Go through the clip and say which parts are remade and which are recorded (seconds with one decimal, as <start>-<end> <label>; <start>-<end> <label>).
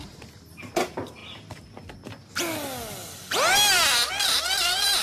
0.0-1.2 remade; 1.2-4.1 recorded; 4.1-5.0 remade